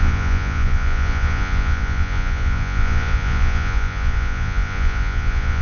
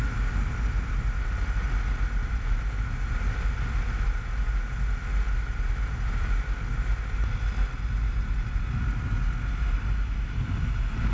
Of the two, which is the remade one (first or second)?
first